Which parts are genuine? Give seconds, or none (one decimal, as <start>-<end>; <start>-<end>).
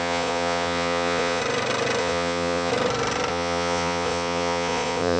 1.4-2.0; 2.7-3.3